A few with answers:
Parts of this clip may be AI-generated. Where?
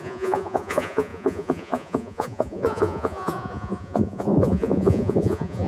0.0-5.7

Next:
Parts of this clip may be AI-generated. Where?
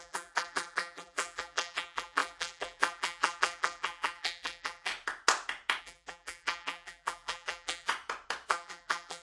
0.0-4.9; 5.8-7.9; 8.5-9.2